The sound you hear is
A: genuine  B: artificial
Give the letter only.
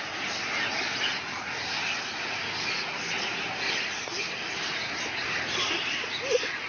A